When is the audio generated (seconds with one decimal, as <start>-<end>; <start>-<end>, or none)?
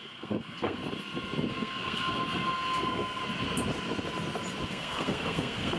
0.0-0.8; 1.5-3.2; 4.7-5.8